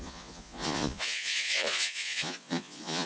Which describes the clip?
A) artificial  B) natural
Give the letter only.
A